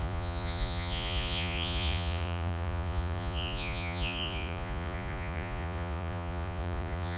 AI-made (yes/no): yes